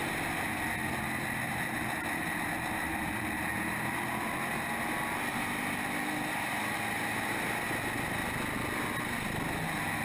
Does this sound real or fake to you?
real